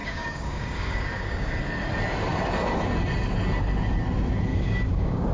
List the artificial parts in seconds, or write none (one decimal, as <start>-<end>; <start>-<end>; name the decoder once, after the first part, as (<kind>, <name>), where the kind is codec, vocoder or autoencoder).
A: 0.0-1.6 (codec, DAC); 4.5-5.3